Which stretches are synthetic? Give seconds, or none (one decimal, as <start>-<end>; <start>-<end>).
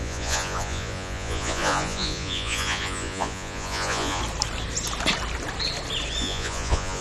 0.0-4.2; 6.2-7.0